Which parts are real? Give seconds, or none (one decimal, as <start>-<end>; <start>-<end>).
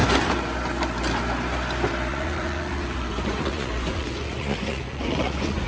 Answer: 0.0-2.1